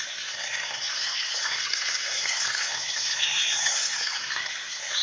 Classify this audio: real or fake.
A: fake